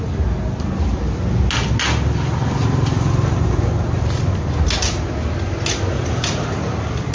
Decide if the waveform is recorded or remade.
recorded